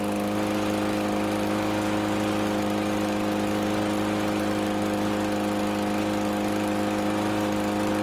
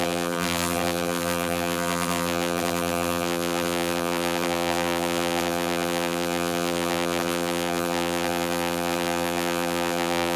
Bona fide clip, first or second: first